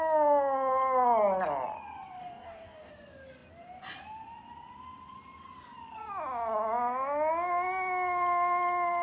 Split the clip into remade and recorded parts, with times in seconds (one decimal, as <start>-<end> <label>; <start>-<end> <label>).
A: 0.0-2.2 recorded; 2.2-2.9 remade; 2.9-9.0 recorded